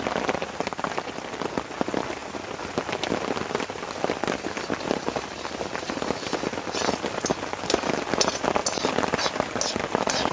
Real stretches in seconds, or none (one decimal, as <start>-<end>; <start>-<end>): 0.0-10.3